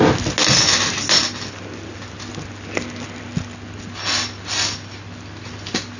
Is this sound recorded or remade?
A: recorded